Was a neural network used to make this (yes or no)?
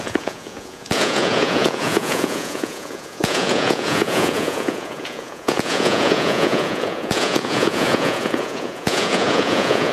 yes